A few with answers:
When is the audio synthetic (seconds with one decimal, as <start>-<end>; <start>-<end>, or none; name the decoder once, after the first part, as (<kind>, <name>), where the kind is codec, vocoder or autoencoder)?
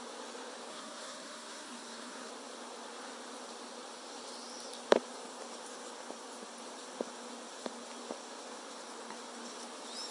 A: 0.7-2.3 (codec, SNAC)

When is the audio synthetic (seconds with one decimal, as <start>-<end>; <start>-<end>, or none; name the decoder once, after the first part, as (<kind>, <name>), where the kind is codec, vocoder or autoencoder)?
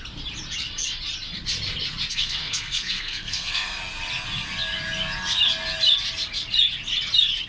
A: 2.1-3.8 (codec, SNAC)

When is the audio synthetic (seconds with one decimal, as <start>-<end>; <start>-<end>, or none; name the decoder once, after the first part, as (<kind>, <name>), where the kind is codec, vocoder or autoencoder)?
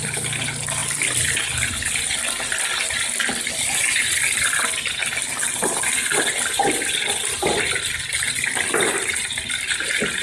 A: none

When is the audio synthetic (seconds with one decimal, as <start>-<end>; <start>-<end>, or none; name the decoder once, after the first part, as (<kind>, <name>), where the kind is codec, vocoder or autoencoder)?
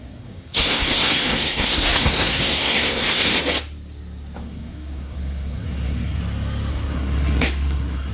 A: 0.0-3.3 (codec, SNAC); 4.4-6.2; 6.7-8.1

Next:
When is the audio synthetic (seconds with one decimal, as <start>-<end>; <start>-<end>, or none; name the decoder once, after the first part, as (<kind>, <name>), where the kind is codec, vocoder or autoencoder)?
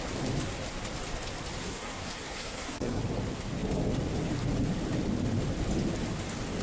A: 1.6-3.0 (codec, SNAC)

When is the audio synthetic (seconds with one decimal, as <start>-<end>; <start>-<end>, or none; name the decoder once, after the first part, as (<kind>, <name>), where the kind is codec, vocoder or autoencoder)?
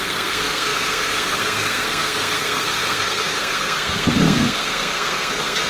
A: 0.0-5.7 (codec, SNAC)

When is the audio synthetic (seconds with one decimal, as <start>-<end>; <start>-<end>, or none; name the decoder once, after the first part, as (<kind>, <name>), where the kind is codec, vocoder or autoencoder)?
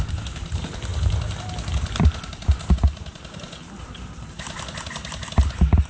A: none